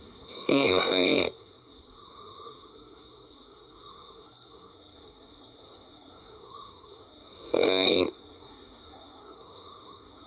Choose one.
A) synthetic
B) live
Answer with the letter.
A